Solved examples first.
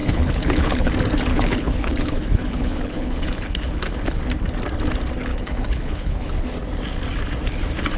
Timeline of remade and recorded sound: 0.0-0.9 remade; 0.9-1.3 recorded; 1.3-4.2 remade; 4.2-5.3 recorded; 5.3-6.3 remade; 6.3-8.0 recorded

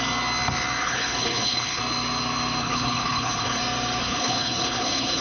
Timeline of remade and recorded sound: 0.0-0.8 recorded; 0.8-1.8 remade; 1.8-2.6 recorded; 2.6-3.6 remade; 3.6-4.0 recorded; 4.0-5.2 remade

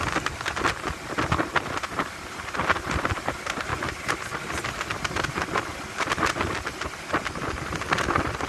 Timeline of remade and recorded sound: 0.0-8.5 recorded

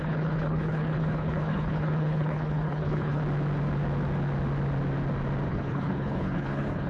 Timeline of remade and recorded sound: 0.0-3.2 remade; 3.2-5.5 recorded; 5.5-6.9 remade

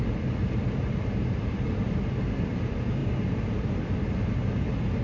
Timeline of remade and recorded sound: 0.0-5.0 recorded

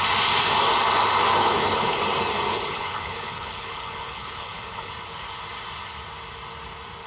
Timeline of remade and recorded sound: 0.0-1.4 recorded; 1.4-2.0 remade; 2.0-2.5 recorded; 2.5-4.9 remade; 4.9-7.1 recorded

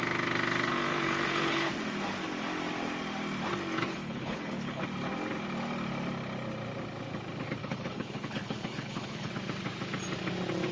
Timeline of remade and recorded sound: 0.0-0.9 recorded; 0.9-1.7 remade; 1.7-3.9 recorded; 3.9-4.8 remade; 4.8-7.6 recorded; 7.6-9.3 remade; 9.3-10.7 recorded